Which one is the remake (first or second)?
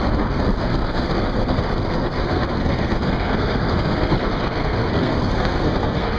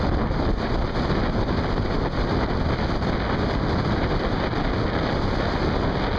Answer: first